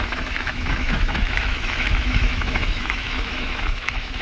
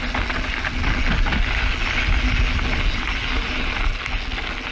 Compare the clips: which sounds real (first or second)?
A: second